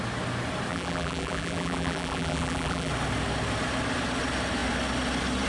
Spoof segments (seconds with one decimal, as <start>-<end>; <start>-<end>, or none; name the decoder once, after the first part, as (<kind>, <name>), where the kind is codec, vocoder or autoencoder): 0.7-2.9 (vocoder, BigVGAN v2)

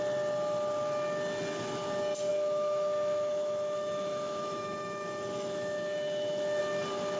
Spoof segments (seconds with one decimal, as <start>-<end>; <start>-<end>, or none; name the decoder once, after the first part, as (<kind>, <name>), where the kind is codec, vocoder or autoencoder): 2.3-6.6 (autoencoder, DAC-VAE)

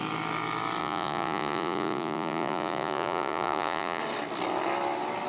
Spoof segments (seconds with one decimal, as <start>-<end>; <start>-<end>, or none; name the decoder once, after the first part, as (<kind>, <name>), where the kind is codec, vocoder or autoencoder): 0.8-4.0 (vocoder, Vocos)

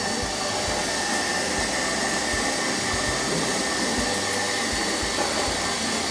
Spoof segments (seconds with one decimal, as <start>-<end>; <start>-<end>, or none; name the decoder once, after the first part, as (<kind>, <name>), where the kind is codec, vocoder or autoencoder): none

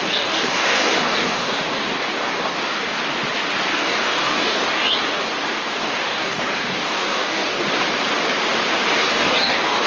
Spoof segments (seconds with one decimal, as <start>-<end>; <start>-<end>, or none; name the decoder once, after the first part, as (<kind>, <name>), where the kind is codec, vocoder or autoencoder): 0.0-3.0 (codec, DAC); 3.7-5.3; 5.8-7.6; 9.0-9.9

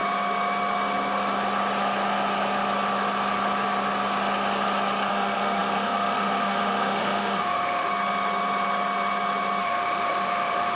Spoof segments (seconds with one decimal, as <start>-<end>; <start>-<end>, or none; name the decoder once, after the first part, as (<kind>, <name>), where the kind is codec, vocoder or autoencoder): 5.1-7.9 (autoencoder, DAC-VAE); 9.6-10.8

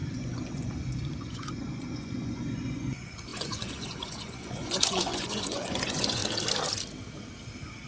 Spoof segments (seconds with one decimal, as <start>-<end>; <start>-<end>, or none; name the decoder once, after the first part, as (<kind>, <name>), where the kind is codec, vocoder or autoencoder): 0.0-6.2 (vocoder, Vocos)